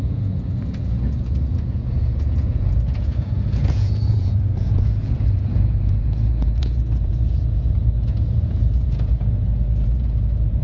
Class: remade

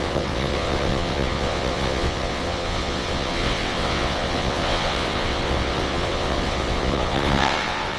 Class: remade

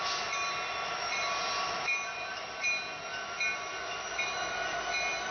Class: recorded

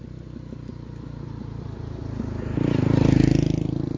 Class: recorded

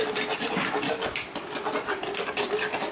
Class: recorded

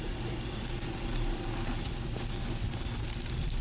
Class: recorded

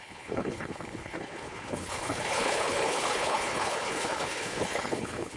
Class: remade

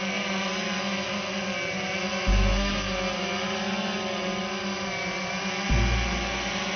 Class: recorded